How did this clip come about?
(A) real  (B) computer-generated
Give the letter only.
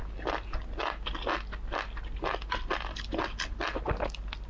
A